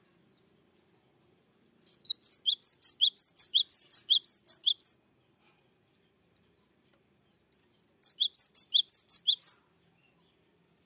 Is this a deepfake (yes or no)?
yes